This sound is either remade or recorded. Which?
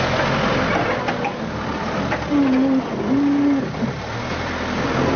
recorded